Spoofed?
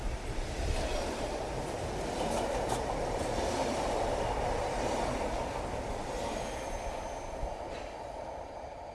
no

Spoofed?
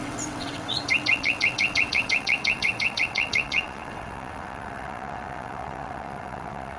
yes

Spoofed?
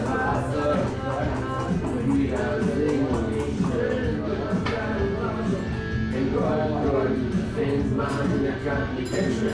no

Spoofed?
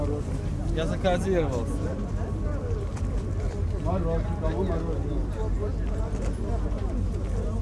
no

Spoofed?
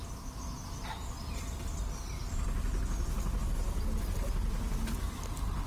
no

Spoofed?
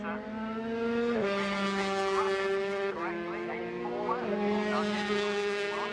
no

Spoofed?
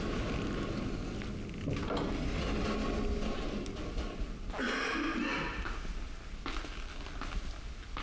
no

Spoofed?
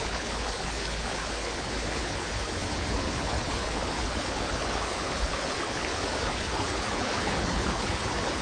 yes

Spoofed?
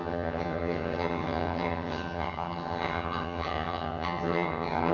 yes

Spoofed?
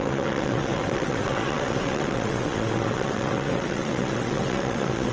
yes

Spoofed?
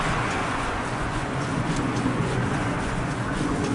yes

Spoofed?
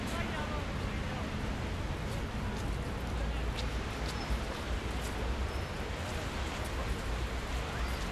no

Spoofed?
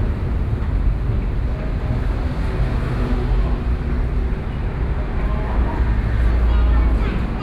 no